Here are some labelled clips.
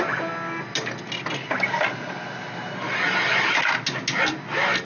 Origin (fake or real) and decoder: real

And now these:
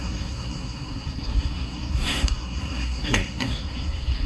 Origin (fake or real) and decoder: fake, codec, SNAC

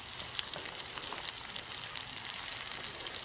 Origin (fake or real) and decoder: real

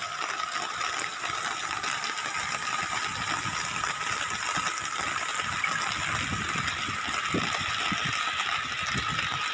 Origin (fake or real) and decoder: real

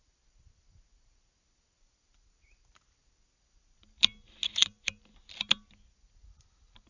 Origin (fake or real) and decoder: real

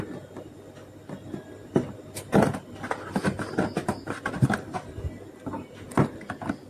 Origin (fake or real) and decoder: real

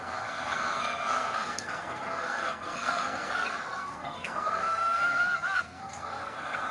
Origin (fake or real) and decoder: fake, codec, SNAC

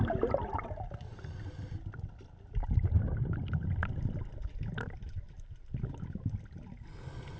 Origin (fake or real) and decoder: real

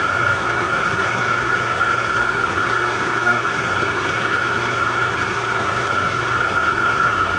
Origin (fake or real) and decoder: fake, codec, SNAC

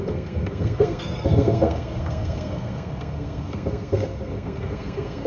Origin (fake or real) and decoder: fake, codec, SNAC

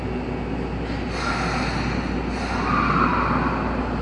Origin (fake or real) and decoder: real